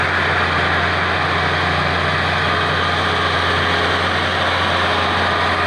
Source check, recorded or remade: recorded